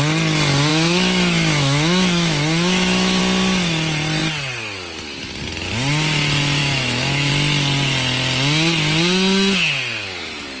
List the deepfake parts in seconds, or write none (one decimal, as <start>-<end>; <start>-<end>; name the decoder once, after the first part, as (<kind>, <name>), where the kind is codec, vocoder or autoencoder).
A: 0.7-3.2 (autoencoder, DAC-VAE); 6.6-7.3